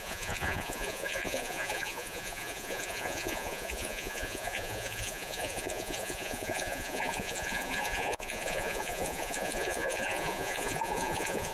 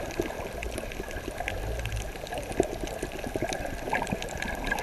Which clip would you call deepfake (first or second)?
first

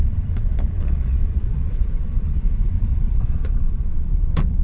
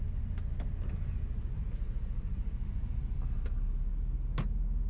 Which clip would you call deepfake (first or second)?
first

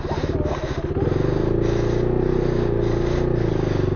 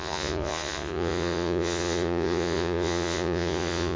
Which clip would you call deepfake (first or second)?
second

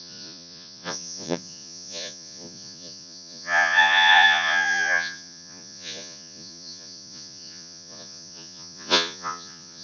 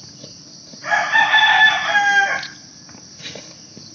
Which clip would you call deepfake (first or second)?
first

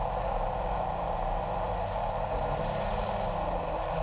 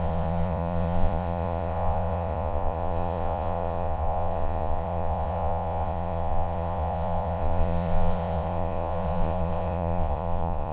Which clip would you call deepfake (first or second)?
second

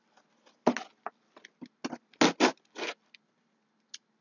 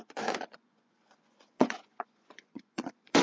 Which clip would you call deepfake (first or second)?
second